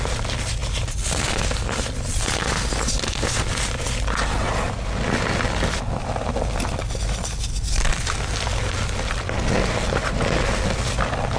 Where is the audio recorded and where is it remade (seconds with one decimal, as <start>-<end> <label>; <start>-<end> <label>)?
0.0-11.4 recorded